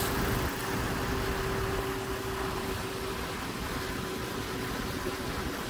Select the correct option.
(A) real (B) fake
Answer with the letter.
A